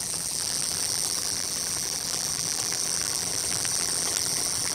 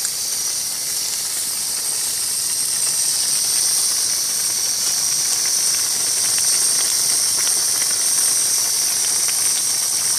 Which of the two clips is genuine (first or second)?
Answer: second